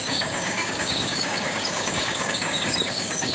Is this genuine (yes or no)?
no